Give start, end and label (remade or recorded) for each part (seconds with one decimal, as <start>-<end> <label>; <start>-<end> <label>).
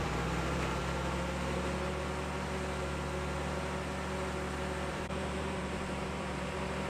0.0-0.8 remade; 0.8-4.9 recorded; 4.9-6.9 remade